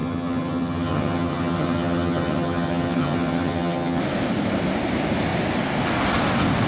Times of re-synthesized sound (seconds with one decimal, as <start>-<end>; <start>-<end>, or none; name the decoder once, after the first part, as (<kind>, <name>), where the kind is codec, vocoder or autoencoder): 0.0-4.0 (vocoder, HiFi-GAN)